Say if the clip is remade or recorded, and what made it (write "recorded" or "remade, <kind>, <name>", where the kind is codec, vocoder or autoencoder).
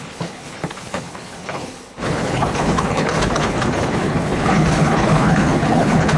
remade, codec, HILCodec